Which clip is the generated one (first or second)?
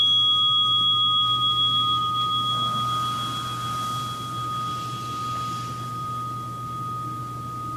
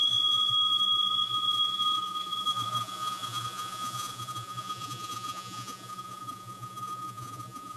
second